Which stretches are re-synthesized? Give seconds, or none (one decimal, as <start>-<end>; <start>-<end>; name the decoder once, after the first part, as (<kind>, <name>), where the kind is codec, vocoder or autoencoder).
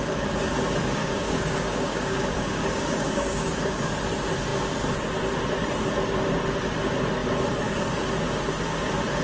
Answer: 1.0-3.9 (codec, DAC)